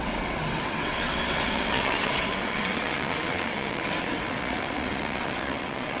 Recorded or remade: remade